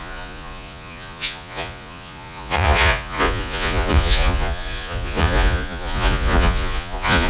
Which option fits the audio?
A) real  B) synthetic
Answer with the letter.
B